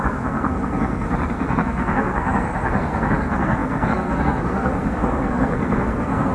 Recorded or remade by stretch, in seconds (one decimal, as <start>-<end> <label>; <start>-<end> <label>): 0.0-6.3 remade